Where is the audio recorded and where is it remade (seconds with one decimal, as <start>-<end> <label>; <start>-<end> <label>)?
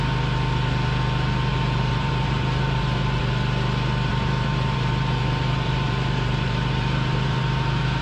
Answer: 0.0-1.5 recorded; 1.5-3.2 remade; 3.2-4.1 recorded; 4.1-8.0 remade